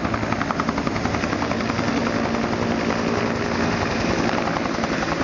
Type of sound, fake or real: real